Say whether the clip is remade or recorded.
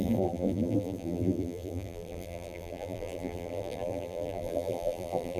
remade